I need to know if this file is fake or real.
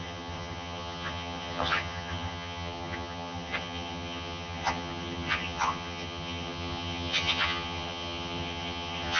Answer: fake